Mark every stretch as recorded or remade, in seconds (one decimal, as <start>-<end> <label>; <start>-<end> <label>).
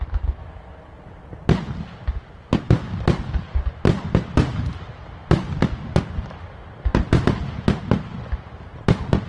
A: 0.0-9.3 recorded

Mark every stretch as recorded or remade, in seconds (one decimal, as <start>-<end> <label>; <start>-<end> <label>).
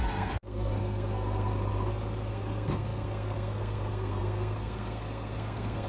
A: 0.0-1.5 remade; 1.5-2.3 recorded; 2.3-5.9 remade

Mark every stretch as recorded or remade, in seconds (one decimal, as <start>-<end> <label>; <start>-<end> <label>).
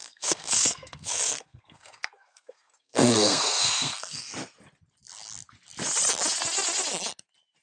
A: 0.0-4.3 remade; 4.3-7.6 recorded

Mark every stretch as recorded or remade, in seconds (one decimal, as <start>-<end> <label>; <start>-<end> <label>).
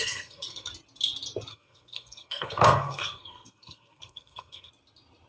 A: 0.0-0.7 remade; 0.7-1.5 recorded; 1.5-4.7 remade; 4.7-5.3 recorded